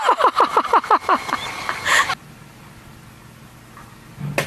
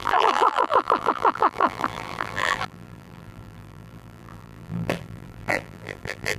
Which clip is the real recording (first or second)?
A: first